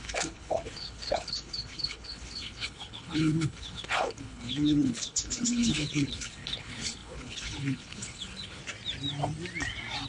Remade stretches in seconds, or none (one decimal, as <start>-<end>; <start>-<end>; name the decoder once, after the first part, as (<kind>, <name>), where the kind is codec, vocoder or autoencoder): 0.0-8.6 (codec, HILCodec)